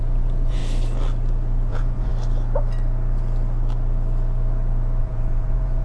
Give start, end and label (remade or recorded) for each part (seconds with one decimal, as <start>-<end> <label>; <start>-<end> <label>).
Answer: 0.0-0.6 remade; 0.6-1.7 recorded; 1.7-2.1 remade; 2.1-5.0 recorded; 5.0-5.8 remade